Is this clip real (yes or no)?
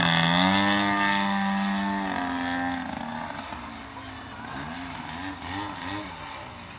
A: yes